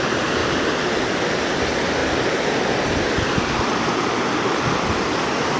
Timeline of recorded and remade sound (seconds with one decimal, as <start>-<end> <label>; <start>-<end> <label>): 0.0-5.6 recorded